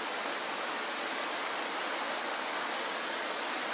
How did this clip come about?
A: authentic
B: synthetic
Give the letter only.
A